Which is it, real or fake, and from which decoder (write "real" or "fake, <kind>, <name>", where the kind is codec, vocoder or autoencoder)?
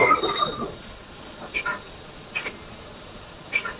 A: fake, vocoder, Vocos